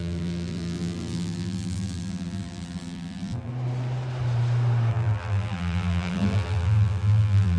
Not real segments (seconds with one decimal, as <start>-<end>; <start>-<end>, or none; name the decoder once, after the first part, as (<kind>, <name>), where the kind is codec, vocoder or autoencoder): 0.0-3.5 (vocoder, BigVGAN v2); 4.9-7.6